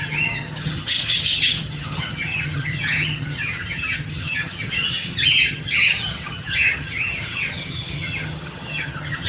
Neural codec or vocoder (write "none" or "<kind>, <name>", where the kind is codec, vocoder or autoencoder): vocoder, HiFi-GAN